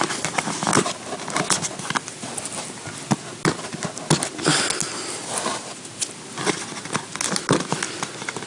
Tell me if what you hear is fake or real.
real